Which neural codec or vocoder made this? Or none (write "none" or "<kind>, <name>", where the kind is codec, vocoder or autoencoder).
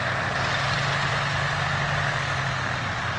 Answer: none